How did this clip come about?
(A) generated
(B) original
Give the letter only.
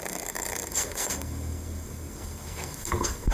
A